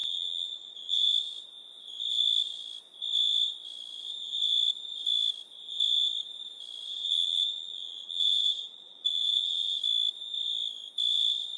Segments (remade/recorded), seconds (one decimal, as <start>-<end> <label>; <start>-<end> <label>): 0.0-1.1 remade; 1.1-6.9 recorded; 6.9-9.8 remade; 9.8-11.6 recorded